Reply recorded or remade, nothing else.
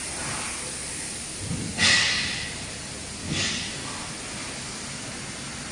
recorded